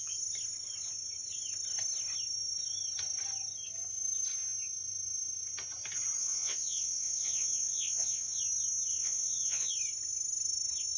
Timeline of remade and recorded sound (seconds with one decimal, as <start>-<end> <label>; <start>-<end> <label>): 0.0-6.2 recorded; 6.2-8.4 remade; 8.4-8.9 recorded; 8.9-9.7 remade; 9.7-11.0 recorded